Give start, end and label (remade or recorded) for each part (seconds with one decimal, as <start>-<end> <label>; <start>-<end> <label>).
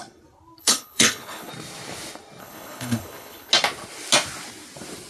0.0-0.6 recorded; 0.6-1.5 remade; 1.5-2.4 recorded; 2.4-3.5 remade; 3.5-5.1 recorded